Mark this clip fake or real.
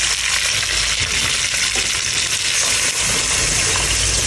real